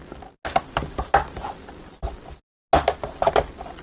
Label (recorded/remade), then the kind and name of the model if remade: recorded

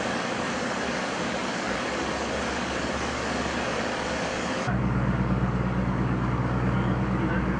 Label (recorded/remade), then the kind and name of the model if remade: remade, codec, DAC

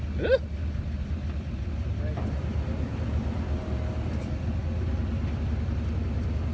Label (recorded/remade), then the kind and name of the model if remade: recorded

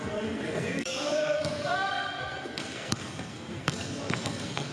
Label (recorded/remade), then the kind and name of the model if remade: remade, codec, SNAC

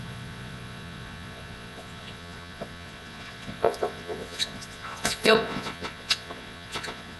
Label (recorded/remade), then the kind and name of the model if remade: remade, vocoder, Vocos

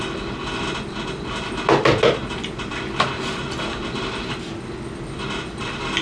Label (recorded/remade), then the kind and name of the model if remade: recorded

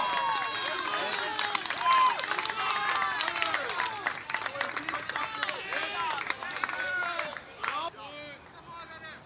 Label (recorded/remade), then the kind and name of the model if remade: recorded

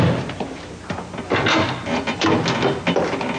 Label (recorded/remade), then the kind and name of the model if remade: recorded